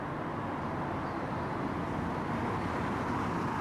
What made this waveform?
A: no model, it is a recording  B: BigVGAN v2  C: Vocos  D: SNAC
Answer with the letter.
A